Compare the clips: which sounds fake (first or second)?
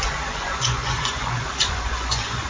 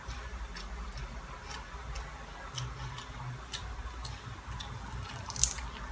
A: first